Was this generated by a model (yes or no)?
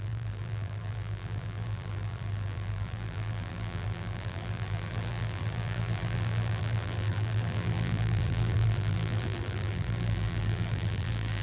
yes